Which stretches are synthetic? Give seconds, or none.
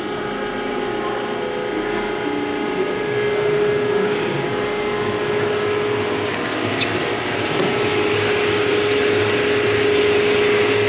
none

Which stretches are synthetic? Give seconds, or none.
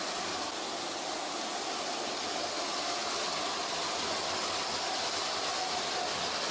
none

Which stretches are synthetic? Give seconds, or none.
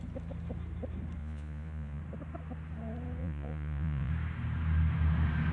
1.2-2.0; 3.2-4.1